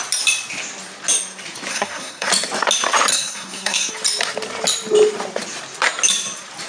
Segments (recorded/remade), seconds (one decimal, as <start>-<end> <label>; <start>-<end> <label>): 0.0-1.7 recorded; 1.7-2.3 remade; 2.3-3.1 recorded; 3.1-3.9 remade; 3.9-6.7 recorded